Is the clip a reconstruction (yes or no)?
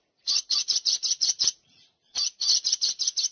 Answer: yes